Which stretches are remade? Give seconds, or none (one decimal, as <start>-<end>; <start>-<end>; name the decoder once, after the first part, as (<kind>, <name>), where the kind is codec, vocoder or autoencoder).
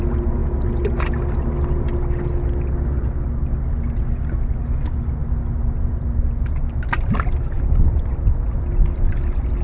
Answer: none